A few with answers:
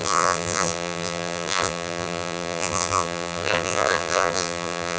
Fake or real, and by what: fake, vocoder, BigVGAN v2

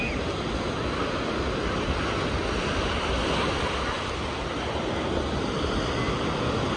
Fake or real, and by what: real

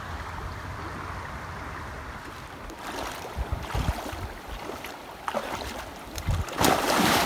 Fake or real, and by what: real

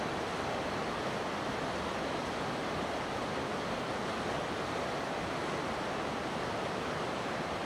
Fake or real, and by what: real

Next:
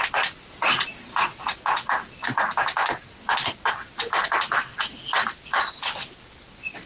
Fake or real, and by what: real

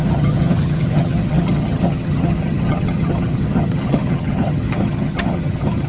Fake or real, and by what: fake, vocoder, HiFi-GAN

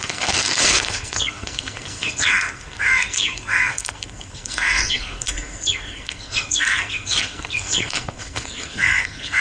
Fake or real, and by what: fake, codec, SNAC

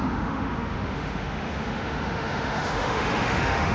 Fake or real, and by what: fake, autoencoder, DAC-VAE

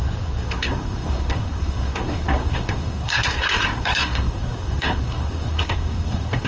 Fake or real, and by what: fake, codec, SNAC